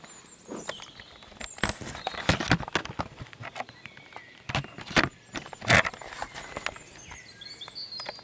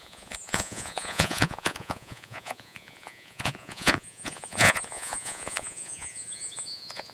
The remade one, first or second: second